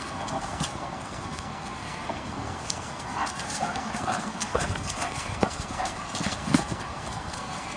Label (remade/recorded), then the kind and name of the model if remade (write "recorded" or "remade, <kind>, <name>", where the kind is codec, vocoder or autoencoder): remade, codec, SNAC